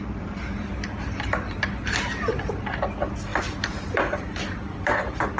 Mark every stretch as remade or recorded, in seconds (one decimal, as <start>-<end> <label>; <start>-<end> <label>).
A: 0.0-2.3 recorded; 2.3-2.8 remade; 2.8-3.3 recorded; 3.3-5.4 remade